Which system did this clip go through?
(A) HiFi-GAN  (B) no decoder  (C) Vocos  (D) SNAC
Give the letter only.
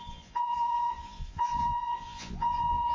C